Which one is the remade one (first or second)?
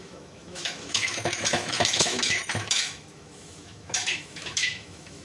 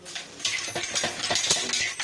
first